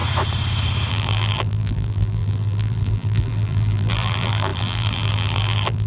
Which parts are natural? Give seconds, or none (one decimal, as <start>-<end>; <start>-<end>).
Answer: 0.0-0.9